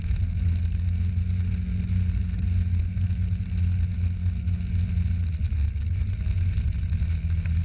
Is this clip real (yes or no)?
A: yes